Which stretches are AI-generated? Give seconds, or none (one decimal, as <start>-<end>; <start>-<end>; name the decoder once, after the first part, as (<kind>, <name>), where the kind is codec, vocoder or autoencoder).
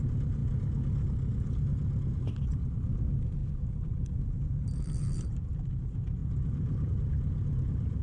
3.4-5.8 (vocoder, BigVGAN v2)